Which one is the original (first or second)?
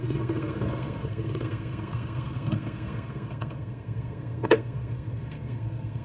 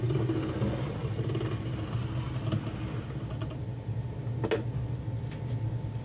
second